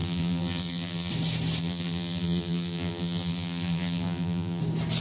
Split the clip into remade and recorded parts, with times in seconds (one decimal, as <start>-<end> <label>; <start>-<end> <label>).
0.0-1.1 remade; 1.1-1.6 recorded; 1.6-4.6 remade; 4.6-5.0 recorded